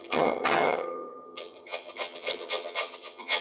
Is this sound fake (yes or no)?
yes